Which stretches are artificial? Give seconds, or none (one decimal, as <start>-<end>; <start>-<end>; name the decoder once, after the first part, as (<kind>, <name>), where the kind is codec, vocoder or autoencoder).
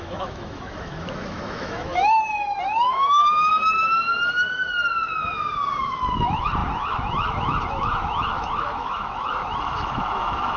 0.0-3.2 (autoencoder, DAC-VAE); 5.8-10.6